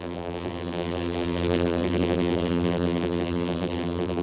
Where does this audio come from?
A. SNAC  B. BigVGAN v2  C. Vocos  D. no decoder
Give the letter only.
B